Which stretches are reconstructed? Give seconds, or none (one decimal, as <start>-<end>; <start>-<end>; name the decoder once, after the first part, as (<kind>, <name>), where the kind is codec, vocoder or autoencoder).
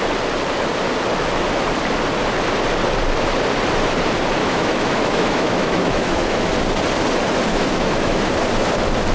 4.4-6.5 (autoencoder, DAC-VAE); 7.5-8.3